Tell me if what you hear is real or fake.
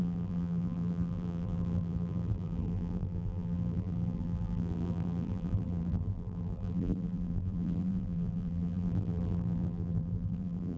fake